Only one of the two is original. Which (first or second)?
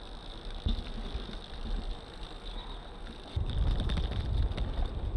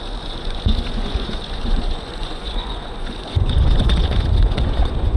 first